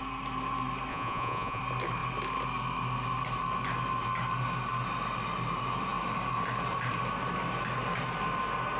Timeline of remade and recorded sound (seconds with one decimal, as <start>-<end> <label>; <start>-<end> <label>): 0.0-0.9 recorded; 0.9-1.6 remade; 1.6-8.8 recorded